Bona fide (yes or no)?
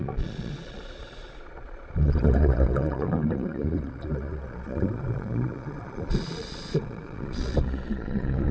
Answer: no